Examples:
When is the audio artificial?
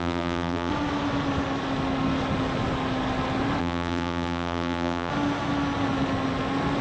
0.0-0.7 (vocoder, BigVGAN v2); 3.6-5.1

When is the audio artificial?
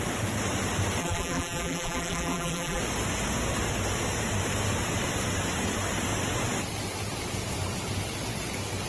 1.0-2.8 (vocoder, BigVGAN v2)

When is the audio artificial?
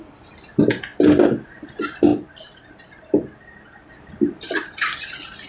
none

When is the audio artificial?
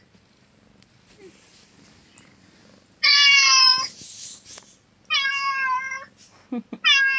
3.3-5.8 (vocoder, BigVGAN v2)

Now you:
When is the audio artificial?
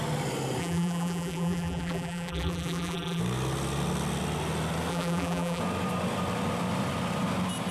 0.6-3.2 (vocoder, BigVGAN v2); 4.9-5.6